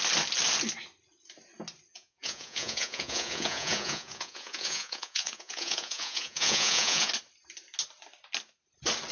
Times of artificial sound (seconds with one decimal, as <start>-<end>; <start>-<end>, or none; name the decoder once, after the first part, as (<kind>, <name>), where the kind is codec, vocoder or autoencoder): 1.9-7.1 (vocoder, Vocos)